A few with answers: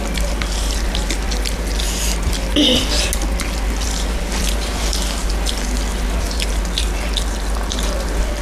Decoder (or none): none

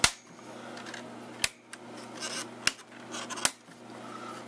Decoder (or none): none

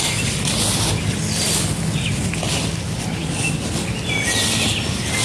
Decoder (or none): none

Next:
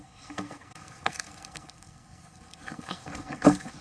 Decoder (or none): codec, SNAC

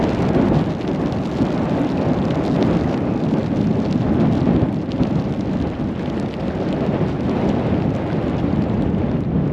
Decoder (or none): none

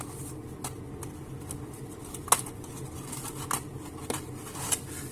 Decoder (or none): none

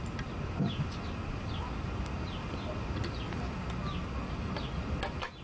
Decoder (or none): none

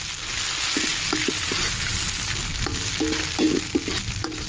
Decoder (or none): none